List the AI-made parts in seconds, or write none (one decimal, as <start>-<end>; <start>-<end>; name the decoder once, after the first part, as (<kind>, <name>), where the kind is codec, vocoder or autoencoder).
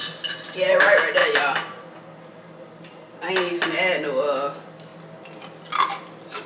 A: none